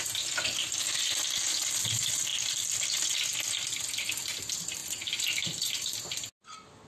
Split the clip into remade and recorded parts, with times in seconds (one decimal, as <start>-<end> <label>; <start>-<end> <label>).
0.0-6.9 recorded